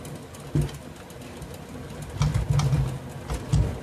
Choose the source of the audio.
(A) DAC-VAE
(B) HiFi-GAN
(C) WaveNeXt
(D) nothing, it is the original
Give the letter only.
D